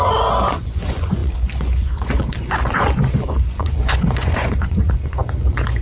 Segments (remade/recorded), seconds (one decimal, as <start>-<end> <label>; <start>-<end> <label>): 0.0-5.8 remade